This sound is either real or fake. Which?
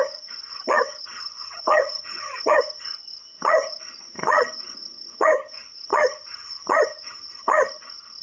fake